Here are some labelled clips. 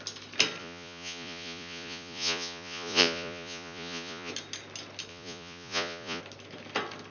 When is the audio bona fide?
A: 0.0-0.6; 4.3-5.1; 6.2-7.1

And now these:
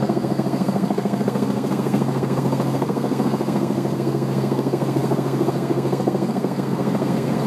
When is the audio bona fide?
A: none

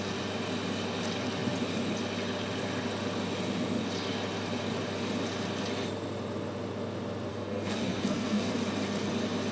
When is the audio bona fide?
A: 0.0-7.3; 8.5-9.5

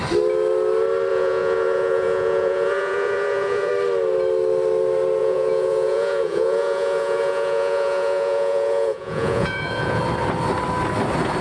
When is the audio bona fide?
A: 0.0-1.1; 3.7-5.2; 10.0-11.4

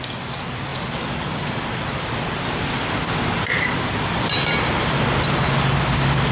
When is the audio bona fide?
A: 0.0-6.3

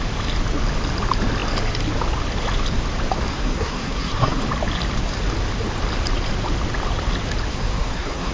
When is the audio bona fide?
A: 0.0-3.3; 4.4-7.5

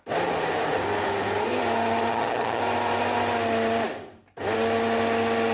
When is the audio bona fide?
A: 0.0-2.1; 2.6-5.5

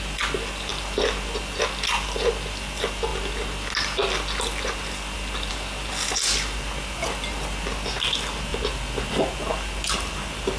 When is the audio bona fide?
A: 0.0-10.6